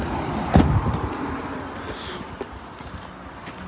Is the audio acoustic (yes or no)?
yes